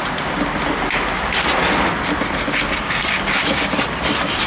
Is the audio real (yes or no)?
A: yes